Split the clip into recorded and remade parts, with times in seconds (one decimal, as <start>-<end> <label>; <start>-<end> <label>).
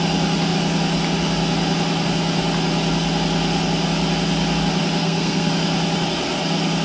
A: 0.0-5.0 recorded; 5.0-5.5 remade; 5.5-6.8 recorded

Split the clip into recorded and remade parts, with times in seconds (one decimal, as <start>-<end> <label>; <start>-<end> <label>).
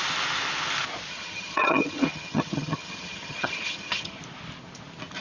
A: 0.0-1.1 recorded; 1.1-4.2 remade; 4.2-5.2 recorded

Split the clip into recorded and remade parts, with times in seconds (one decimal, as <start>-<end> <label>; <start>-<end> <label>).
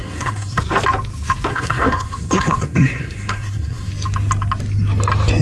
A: 0.0-0.6 remade; 0.6-1.5 recorded; 1.5-3.9 remade; 3.9-5.4 recorded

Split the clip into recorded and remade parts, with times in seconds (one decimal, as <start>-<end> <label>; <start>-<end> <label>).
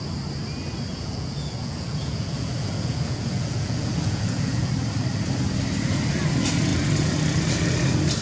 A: 0.0-0.9 recorded; 0.9-4.7 remade; 4.7-8.2 recorded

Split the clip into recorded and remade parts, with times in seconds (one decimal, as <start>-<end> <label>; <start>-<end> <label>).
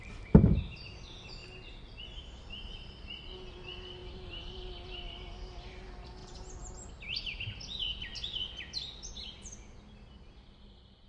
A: 0.0-4.0 recorded; 4.0-4.7 remade; 4.7-6.2 recorded; 6.2-6.9 remade; 6.9-11.1 recorded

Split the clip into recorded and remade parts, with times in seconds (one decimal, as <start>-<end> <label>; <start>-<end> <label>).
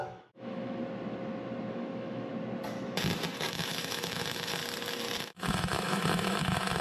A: 0.0-0.8 remade; 0.8-1.7 recorded; 1.7-2.3 remade; 2.3-3.5 recorded; 3.5-4.6 remade; 4.6-5.2 recorded; 5.2-6.8 remade